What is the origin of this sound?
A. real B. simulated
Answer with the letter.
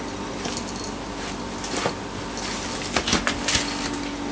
A